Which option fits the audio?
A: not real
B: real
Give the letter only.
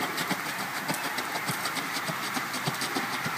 B